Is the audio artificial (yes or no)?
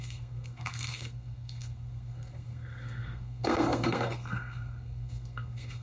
yes